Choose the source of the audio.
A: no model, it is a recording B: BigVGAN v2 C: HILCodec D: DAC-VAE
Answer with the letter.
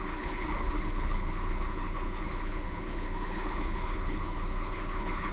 C